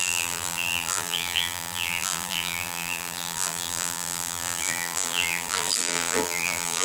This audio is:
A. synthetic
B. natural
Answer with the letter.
A